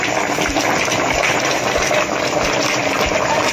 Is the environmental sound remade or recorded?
recorded